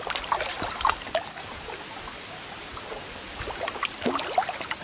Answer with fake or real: fake